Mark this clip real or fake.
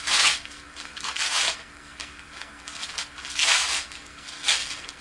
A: fake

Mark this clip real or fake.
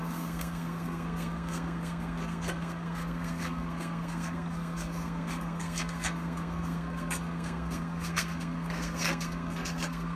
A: fake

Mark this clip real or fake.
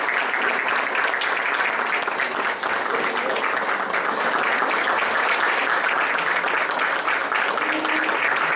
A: real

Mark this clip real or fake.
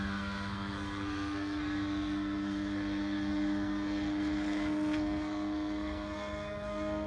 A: fake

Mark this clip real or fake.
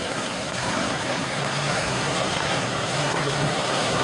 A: fake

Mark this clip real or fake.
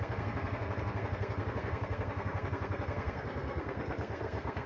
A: fake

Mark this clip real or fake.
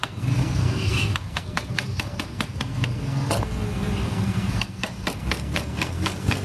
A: fake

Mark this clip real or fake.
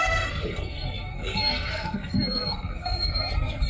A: fake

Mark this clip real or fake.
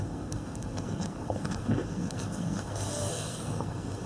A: fake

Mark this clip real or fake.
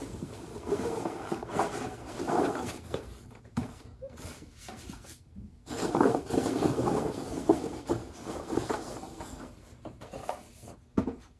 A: fake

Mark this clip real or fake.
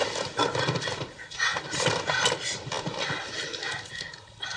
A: real